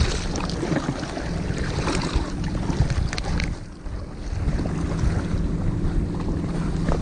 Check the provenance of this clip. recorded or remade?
recorded